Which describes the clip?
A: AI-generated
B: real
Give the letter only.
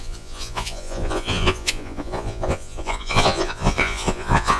A